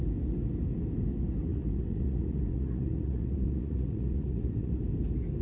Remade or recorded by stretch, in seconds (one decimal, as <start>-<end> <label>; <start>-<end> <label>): 0.0-1.5 recorded; 1.5-4.7 remade; 4.7-5.4 recorded